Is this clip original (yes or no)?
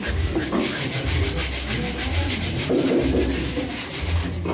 yes